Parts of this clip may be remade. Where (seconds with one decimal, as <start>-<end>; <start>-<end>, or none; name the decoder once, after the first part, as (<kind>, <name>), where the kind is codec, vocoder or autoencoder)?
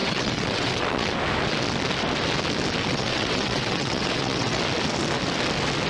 0.0-1.1 (vocoder, WaveNeXt); 2.9-4.6